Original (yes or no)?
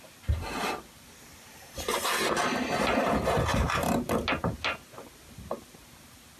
yes